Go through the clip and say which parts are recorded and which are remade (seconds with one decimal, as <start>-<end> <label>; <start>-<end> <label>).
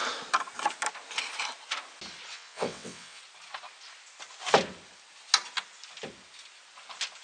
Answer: 0.0-2.3 recorded; 2.3-3.2 remade; 3.2-7.2 recorded